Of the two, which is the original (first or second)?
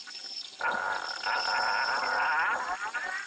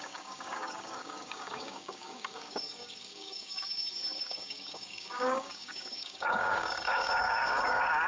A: first